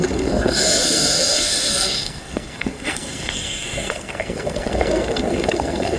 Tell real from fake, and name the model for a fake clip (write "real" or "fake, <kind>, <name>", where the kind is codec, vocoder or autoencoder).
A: fake, codec, SNAC